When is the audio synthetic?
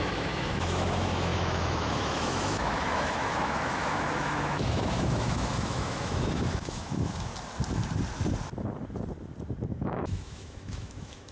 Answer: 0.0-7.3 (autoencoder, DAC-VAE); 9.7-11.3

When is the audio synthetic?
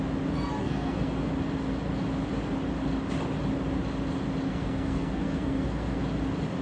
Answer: 0.6-1.3 (codec, SNAC); 4.5-6.0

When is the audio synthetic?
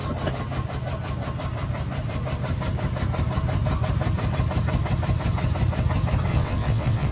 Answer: 6.3-7.1 (vocoder, WaveNeXt)